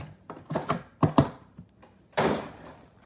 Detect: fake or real real